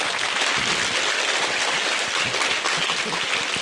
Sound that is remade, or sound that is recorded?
recorded